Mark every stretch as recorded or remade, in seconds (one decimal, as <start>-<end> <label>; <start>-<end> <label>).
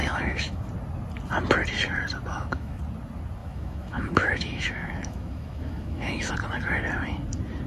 0.0-0.7 remade; 0.7-2.3 recorded; 2.3-2.8 remade; 2.8-3.4 recorded; 3.4-6.3 remade; 6.3-7.7 recorded